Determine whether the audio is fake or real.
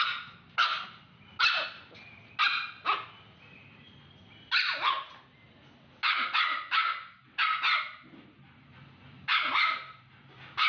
real